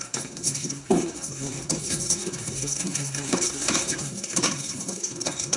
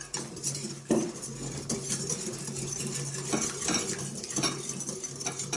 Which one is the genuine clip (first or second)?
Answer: second